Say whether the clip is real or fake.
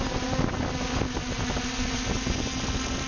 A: real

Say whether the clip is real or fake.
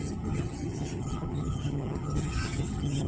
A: fake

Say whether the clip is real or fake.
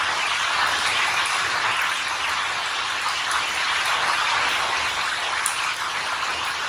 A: real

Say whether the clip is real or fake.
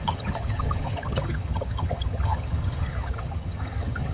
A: fake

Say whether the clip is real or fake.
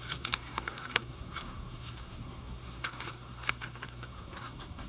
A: fake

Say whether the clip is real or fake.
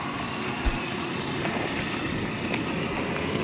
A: real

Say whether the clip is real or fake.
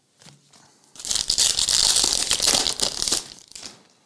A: real